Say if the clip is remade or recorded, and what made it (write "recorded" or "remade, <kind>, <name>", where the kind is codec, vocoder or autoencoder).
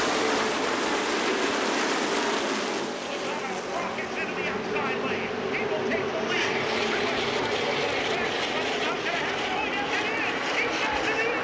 recorded